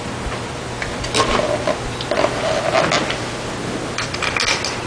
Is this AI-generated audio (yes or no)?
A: no